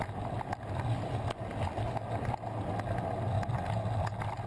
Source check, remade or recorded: recorded